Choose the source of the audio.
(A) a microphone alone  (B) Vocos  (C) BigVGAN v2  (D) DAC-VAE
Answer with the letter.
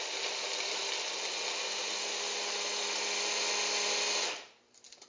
A